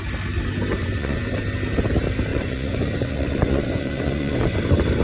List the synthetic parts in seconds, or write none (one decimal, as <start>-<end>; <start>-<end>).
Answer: 0.8-1.3; 2.3-4.6